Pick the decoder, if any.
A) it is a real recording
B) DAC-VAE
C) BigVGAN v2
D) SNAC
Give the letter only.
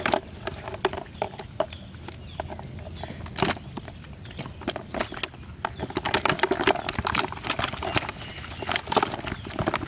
A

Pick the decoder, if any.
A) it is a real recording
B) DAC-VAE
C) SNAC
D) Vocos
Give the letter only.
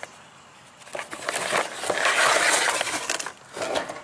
A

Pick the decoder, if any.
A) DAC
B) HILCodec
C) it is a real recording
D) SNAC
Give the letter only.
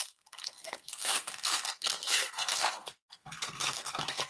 D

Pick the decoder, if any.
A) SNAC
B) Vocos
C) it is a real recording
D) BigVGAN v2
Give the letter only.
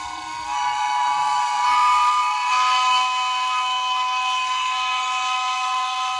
A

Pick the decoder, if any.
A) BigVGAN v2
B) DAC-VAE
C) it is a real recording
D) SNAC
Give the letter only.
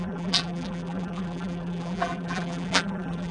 A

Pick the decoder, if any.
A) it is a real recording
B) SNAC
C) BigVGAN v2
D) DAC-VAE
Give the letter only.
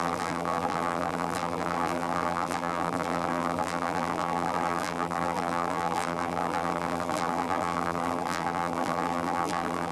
C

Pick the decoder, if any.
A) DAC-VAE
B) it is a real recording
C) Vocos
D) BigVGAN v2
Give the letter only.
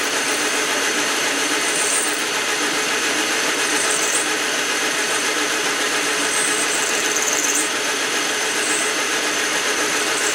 D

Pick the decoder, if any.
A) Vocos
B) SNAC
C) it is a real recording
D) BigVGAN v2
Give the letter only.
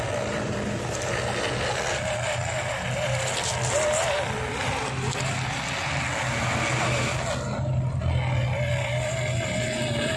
C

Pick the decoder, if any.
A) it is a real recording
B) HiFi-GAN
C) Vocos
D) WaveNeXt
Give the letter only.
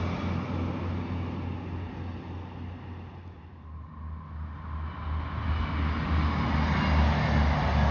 A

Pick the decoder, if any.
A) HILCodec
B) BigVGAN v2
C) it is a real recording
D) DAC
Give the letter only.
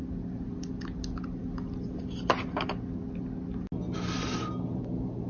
C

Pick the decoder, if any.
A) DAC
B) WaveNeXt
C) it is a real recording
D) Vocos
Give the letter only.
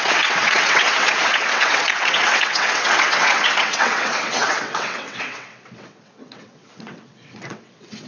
B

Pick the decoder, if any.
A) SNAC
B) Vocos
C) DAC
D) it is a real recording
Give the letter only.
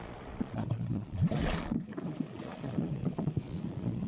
B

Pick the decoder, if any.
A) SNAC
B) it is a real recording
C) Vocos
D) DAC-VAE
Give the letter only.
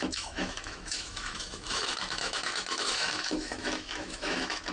D